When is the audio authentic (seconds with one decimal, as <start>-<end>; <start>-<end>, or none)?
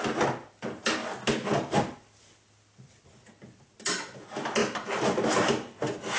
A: 0.0-6.2